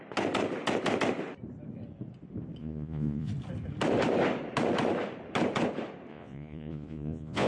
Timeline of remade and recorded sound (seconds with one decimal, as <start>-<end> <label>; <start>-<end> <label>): 0.0-2.6 recorded; 2.6-3.3 remade; 3.3-6.1 recorded; 6.1-7.5 remade